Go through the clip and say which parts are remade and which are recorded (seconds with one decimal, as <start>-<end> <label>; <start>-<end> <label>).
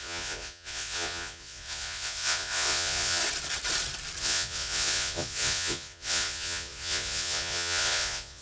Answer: 0.0-3.2 remade; 3.2-4.2 recorded; 4.2-8.4 remade